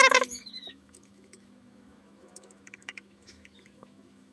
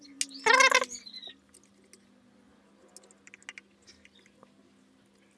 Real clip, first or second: second